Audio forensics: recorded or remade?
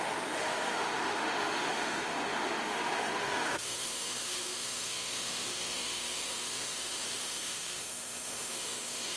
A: remade